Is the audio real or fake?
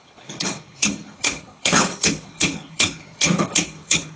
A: fake